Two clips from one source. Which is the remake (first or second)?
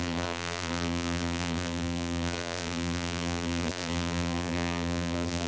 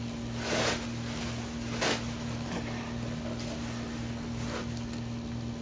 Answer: first